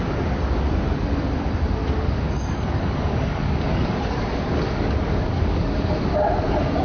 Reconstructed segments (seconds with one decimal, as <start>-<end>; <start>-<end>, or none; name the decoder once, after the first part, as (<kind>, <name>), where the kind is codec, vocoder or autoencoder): 1.8-5.9 (codec, DAC)